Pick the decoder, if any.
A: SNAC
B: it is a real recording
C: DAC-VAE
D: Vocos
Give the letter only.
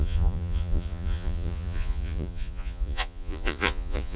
D